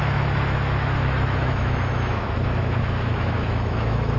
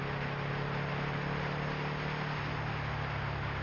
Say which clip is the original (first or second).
second